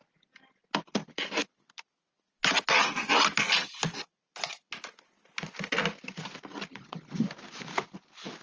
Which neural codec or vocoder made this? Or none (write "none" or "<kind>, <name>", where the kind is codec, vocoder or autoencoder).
none